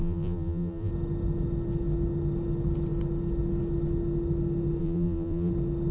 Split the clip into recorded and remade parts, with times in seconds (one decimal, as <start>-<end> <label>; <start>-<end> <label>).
0.0-0.9 remade; 0.9-4.8 recorded; 4.8-5.5 remade; 5.5-5.9 recorded